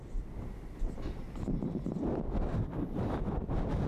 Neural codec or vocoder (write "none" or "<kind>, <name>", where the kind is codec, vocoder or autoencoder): none